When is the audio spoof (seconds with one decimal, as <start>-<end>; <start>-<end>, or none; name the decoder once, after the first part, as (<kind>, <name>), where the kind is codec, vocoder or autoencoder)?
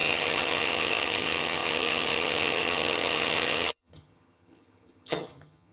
0.0-5.7 (vocoder, HiFi-GAN)